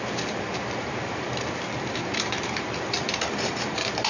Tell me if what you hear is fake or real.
fake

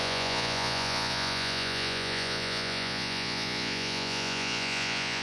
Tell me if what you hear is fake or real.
fake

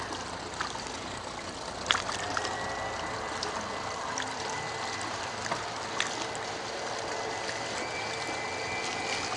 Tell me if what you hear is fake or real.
real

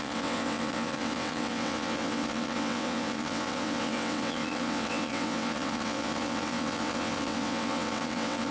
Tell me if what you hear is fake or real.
fake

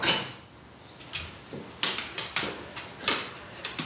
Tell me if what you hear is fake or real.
real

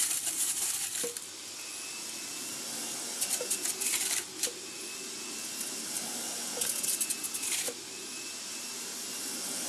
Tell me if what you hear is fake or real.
real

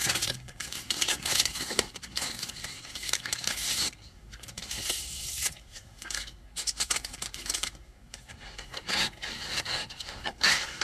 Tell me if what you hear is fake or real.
fake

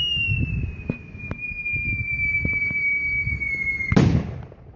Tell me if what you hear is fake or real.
real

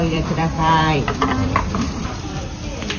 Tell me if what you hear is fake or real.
fake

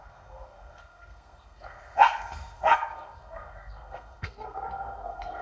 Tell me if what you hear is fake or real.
fake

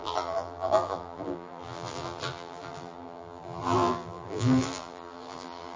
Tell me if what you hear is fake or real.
fake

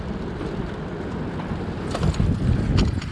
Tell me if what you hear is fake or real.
real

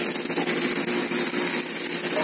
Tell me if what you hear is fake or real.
real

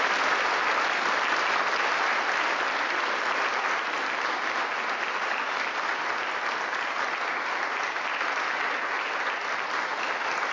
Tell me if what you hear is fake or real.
real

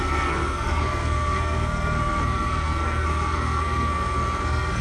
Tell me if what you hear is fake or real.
fake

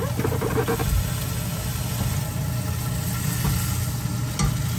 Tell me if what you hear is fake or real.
real